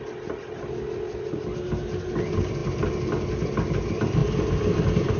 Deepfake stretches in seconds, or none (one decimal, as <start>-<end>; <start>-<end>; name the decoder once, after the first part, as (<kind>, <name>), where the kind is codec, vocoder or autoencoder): none